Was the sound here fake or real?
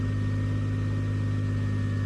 real